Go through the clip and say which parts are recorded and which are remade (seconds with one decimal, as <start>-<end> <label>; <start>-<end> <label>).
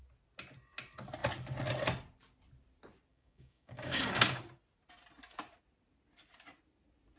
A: 0.0-3.1 recorded; 3.1-4.4 remade; 4.4-7.2 recorded